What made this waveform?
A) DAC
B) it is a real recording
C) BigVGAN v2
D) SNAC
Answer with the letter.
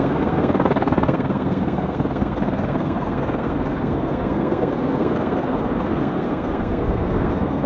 D